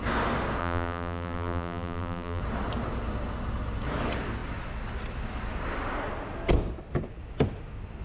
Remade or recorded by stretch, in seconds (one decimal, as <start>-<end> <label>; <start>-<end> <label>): 0.0-0.6 recorded; 0.6-2.4 remade; 2.4-8.0 recorded